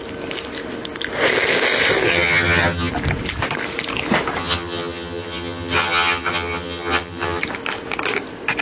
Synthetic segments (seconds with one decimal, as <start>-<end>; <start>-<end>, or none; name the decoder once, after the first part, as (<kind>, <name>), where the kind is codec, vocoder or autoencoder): 2.1-2.9 (vocoder, HiFi-GAN); 4.4-7.4